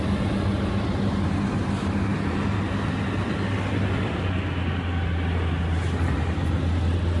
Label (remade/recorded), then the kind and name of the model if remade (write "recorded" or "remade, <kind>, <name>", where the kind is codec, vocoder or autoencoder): recorded